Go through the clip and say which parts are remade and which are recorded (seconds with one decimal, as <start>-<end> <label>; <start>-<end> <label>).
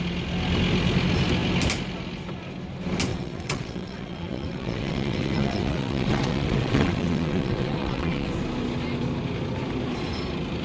0.0-3.1 recorded; 3.1-8.3 remade; 8.3-10.6 recorded